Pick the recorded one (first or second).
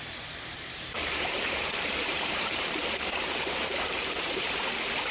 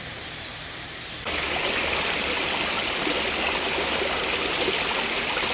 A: second